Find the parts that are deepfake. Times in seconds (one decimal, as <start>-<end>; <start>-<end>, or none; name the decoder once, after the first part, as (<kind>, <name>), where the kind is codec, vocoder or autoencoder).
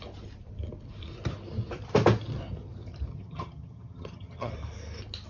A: 3.1-4.5 (vocoder, HiFi-GAN)